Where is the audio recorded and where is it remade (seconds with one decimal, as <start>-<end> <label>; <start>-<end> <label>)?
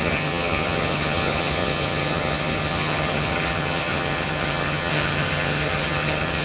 0.0-6.4 remade